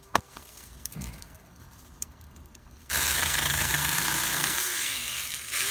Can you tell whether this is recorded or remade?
remade